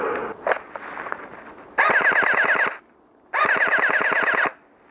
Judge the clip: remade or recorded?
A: recorded